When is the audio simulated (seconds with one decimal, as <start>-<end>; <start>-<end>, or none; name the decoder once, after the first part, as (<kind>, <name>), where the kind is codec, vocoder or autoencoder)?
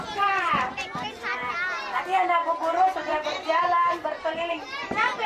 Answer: 3.1-4.5 (vocoder, BigVGAN v2)